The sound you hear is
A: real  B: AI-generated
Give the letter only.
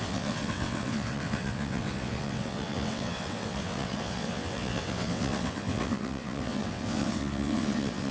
B